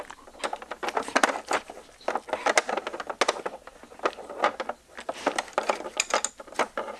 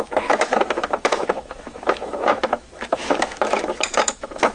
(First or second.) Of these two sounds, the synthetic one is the second